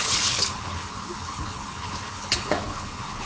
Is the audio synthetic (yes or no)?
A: yes